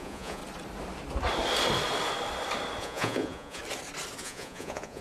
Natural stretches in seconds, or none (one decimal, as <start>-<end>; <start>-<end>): 0.4-2.8; 3.6-4.2